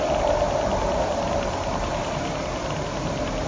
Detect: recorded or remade recorded